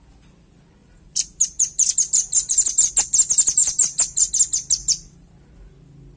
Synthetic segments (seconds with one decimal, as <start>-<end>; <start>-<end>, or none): 0.8-2.9; 3.6-4.3; 4.8-5.3